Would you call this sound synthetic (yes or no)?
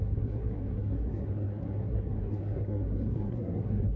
yes